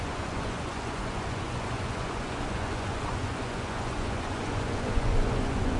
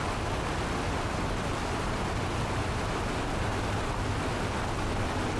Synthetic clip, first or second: first